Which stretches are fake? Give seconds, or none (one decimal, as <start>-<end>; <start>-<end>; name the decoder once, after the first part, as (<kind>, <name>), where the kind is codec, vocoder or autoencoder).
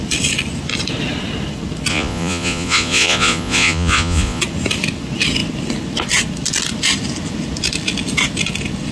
1.9-4.4 (vocoder, Vocos)